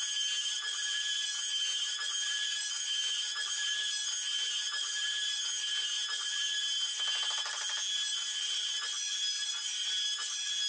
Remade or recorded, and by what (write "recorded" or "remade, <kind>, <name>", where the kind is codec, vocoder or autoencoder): recorded